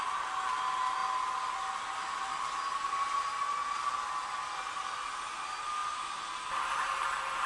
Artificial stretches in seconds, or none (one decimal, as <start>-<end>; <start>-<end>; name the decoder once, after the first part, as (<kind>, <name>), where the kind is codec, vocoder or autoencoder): none